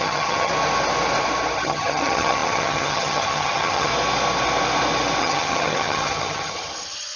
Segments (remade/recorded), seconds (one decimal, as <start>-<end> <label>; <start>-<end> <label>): 0.0-0.5 remade; 0.5-1.6 recorded; 1.6-3.9 remade; 3.9-5.2 recorded; 5.2-7.2 remade